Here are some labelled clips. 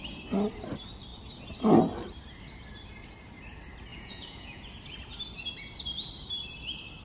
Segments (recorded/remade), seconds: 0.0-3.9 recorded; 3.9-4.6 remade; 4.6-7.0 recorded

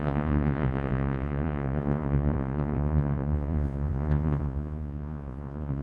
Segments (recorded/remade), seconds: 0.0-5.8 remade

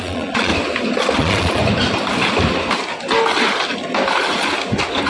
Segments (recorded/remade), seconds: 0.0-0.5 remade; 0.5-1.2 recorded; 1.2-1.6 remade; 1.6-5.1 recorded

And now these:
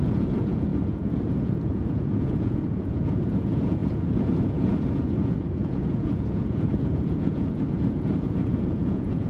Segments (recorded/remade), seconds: 0.0-9.3 remade

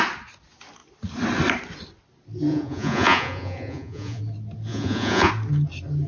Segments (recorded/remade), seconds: 0.0-2.5 recorded; 2.5-4.2 remade; 4.2-4.7 recorded; 4.7-5.3 remade; 5.3-6.1 recorded